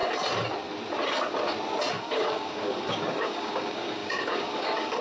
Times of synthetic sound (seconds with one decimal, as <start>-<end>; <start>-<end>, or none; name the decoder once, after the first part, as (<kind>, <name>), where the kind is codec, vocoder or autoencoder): 1.9-5.0 (codec, DAC)